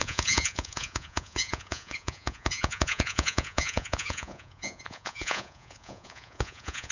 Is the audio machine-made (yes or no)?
yes